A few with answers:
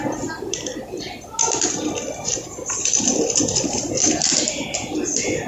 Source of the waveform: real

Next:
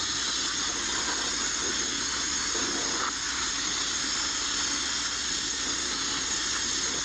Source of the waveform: real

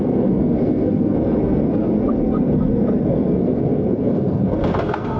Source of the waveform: fake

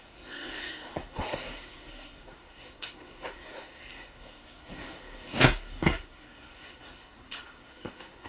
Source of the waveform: fake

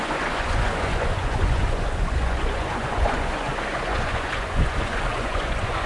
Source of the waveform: fake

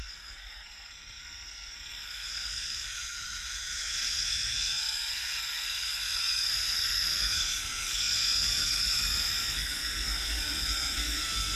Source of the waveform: fake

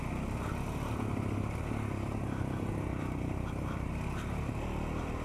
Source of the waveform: real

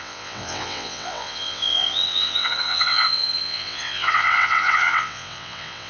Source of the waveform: fake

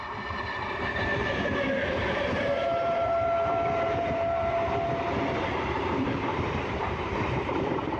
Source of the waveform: fake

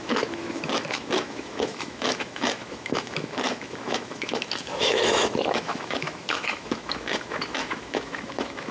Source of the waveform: fake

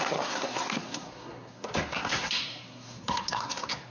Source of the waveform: fake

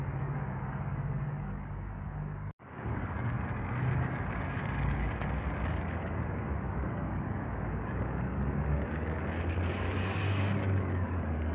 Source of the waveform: fake